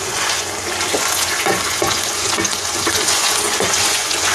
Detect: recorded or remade remade